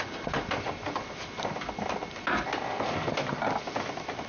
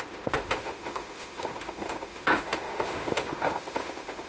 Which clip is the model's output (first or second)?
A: second